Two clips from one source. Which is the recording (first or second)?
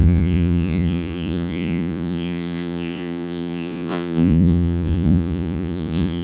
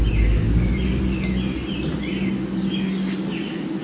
second